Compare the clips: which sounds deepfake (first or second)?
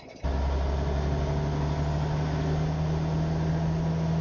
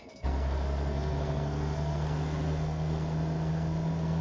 second